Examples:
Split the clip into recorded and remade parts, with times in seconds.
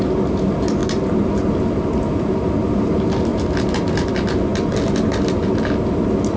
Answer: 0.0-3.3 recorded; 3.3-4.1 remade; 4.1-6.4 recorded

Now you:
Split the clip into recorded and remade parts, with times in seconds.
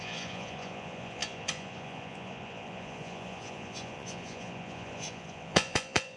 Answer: 0.0-6.2 remade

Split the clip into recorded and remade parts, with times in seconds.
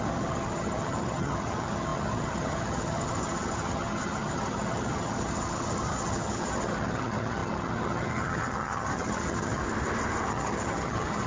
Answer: 0.0-9.6 remade; 9.6-10.3 recorded; 10.3-11.3 remade